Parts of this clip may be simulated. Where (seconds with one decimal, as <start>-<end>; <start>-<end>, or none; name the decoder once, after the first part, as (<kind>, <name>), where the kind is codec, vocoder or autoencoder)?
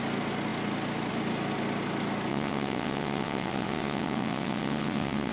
2.3-5.3 (vocoder, WaveNeXt)